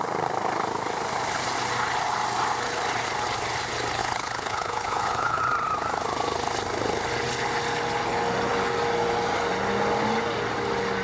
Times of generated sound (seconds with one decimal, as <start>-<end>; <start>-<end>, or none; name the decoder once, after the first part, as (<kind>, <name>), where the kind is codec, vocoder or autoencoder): 4.0-5.4 (codec, HILCodec)